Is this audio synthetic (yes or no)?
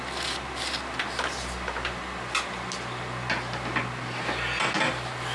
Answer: no